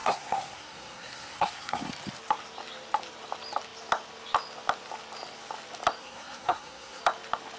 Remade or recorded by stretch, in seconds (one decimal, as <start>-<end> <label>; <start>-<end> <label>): 0.0-1.9 remade; 1.9-6.0 recorded; 6.0-7.0 remade; 7.0-7.6 recorded